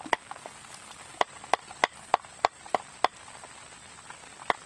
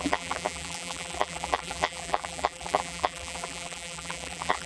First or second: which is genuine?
first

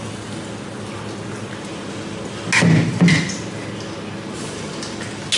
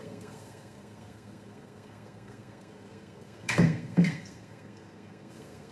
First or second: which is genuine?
first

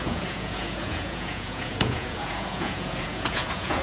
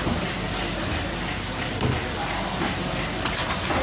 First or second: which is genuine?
second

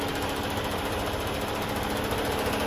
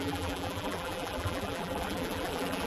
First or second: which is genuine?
first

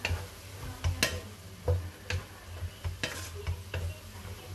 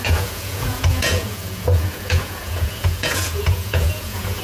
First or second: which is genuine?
first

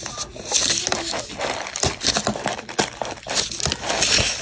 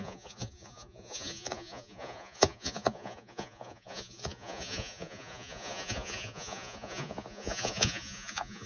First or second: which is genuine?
first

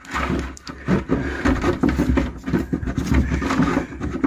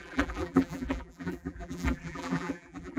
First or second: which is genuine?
first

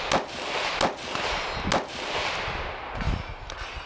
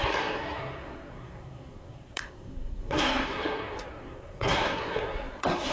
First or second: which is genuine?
first